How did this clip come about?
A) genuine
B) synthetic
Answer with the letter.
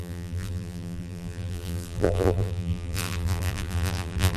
B